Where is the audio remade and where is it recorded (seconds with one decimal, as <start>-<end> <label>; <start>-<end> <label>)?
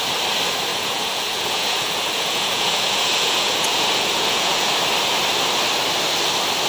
0.0-0.7 recorded; 0.7-4.7 remade; 4.7-6.7 recorded